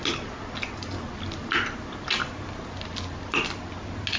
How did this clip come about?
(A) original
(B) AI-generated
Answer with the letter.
A